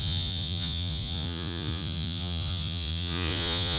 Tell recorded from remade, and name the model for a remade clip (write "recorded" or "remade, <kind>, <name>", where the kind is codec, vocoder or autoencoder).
remade, vocoder, Vocos